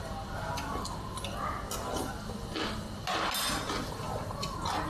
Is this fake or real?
real